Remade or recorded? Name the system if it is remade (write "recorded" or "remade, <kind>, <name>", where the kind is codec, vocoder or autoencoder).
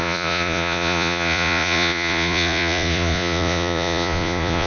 remade, vocoder, Vocos